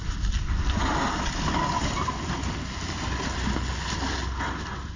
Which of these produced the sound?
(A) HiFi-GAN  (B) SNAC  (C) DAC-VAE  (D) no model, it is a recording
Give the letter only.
D